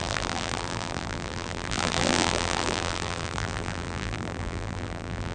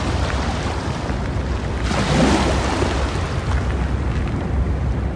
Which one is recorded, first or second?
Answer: second